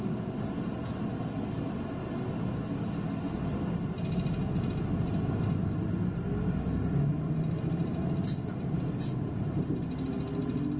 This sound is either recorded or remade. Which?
recorded